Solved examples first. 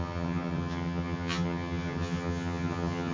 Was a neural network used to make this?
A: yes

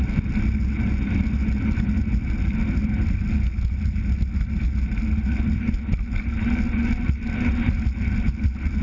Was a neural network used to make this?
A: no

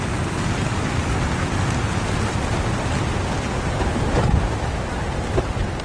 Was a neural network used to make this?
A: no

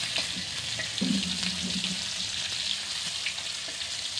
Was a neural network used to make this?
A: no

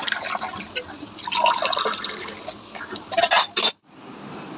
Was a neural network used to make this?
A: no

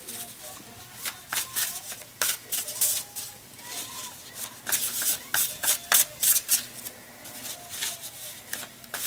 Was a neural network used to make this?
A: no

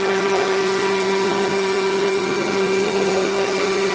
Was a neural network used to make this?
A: yes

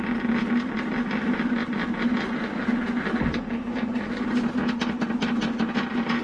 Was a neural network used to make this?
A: no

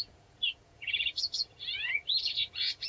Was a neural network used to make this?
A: yes